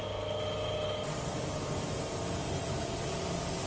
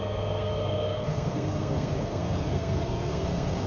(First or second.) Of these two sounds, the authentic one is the first